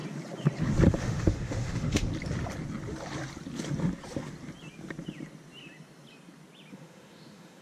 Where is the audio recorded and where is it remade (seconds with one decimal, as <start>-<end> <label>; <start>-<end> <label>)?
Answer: 0.0-1.0 recorded; 1.0-2.1 remade; 2.1-6.7 recorded; 6.7-7.6 remade